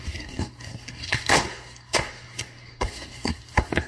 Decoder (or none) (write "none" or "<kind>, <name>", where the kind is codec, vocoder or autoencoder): codec, SNAC